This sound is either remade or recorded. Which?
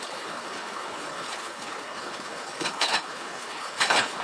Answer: remade